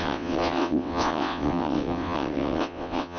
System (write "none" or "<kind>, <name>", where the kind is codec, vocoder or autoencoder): vocoder, WaveNeXt